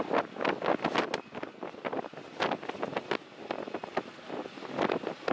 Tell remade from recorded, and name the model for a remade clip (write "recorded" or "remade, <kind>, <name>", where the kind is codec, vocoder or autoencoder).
recorded